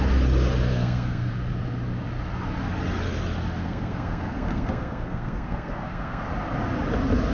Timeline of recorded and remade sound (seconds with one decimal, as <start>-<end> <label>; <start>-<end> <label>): 0.0-0.7 recorded; 0.7-1.3 remade; 1.3-3.6 recorded; 3.6-6.2 remade; 6.2-7.3 recorded